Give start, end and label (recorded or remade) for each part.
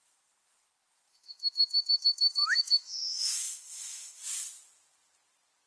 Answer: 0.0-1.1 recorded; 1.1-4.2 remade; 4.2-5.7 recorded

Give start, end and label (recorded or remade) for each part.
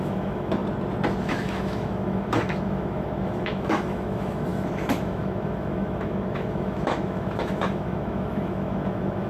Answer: 0.0-0.6 remade; 0.6-1.2 recorded; 1.2-9.3 remade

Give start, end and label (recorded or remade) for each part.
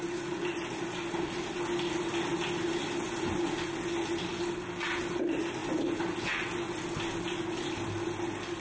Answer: 0.0-8.6 recorded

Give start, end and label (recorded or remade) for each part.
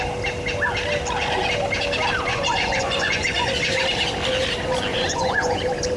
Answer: 0.0-2.3 recorded; 2.3-3.5 remade; 3.5-4.9 recorded; 4.9-5.6 remade; 5.6-6.0 recorded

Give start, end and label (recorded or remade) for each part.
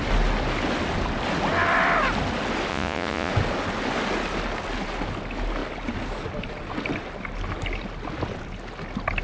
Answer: 0.0-2.7 recorded; 2.7-3.3 remade; 3.3-9.2 recorded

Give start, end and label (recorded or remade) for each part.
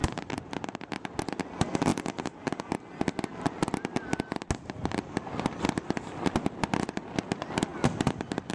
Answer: 0.0-1.0 remade; 1.0-7.7 recorded; 7.7-8.5 remade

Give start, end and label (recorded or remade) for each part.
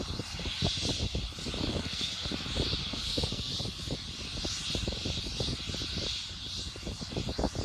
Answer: 0.0-1.7 recorded; 1.7-2.3 remade; 2.3-2.8 recorded; 2.8-3.5 remade; 3.5-7.6 recorded